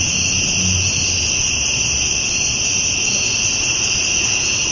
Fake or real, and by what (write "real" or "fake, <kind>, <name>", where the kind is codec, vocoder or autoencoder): real